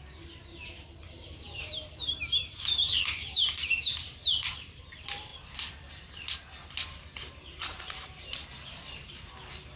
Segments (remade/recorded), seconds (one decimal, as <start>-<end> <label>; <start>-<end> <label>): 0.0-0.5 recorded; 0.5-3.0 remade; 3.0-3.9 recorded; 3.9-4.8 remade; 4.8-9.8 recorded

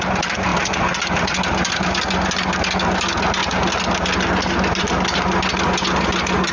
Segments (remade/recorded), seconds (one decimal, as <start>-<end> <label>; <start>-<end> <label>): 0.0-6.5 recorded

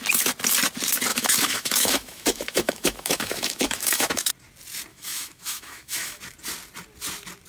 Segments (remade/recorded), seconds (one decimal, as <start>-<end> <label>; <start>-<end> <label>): 0.0-1.1 recorded; 1.1-4.3 remade; 4.3-4.9 recorded; 4.9-6.2 remade; 6.2-7.5 recorded